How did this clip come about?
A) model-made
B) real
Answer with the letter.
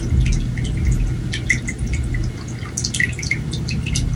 B